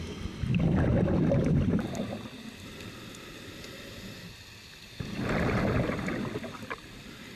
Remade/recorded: recorded